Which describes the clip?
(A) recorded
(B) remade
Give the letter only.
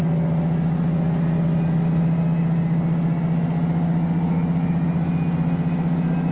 A